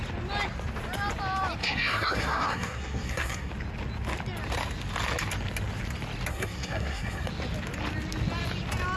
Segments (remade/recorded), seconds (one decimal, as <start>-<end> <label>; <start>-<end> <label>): 0.0-1.6 recorded; 1.6-3.5 remade; 3.5-6.3 recorded; 6.3-7.3 remade; 7.3-9.0 recorded